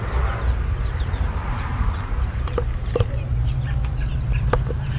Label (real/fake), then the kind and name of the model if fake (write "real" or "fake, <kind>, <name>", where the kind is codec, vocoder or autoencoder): fake, vocoder, BigVGAN v2